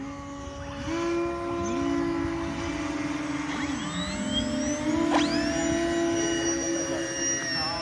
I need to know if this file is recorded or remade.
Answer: recorded